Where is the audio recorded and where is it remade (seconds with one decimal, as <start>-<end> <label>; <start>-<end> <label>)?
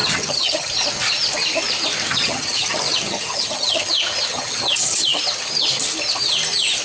0.0-0.7 remade; 0.7-2.1 recorded; 2.1-3.9 remade; 3.9-4.3 recorded; 4.3-5.2 remade; 5.2-6.8 recorded